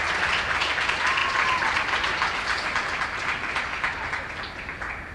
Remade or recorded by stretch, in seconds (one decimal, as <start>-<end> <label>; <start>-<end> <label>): 0.0-5.1 recorded